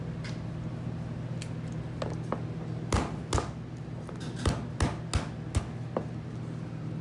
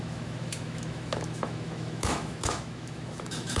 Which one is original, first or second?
first